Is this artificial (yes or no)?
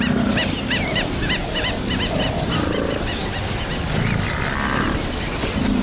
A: no